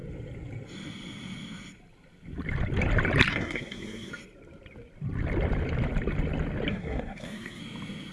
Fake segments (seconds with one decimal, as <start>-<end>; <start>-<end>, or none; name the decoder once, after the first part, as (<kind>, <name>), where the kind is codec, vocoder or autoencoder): 3.3-4.1 (codec, SNAC); 6.7-7.6